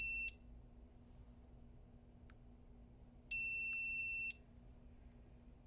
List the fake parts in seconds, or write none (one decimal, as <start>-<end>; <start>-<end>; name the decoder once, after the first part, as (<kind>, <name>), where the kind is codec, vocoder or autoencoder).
none